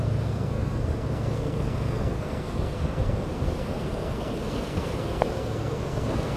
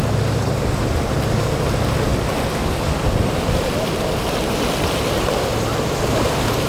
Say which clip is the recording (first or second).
second